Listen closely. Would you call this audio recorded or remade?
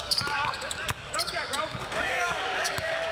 remade